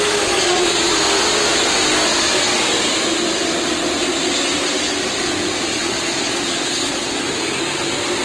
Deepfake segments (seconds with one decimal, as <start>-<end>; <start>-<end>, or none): 0.4-0.9; 5.7-7.2